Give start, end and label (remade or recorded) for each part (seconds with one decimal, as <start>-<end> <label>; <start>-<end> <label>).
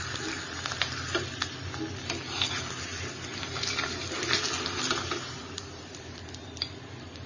0.0-7.3 recorded